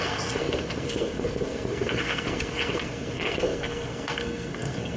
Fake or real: fake